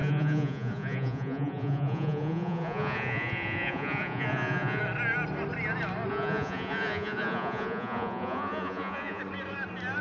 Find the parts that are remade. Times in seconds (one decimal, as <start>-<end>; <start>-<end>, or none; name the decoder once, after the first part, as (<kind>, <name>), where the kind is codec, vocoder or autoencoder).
0.0-4.8 (vocoder, Vocos); 6.1-9.2